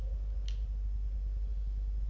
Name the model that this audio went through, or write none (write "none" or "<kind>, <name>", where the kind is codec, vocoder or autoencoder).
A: none